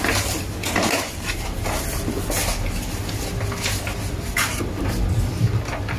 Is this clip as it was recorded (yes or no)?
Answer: yes